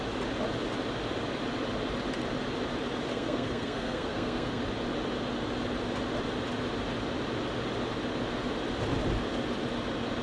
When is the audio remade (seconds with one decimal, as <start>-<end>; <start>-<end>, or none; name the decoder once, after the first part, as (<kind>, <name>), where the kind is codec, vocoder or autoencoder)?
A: 3.1-4.6 (codec, SNAC)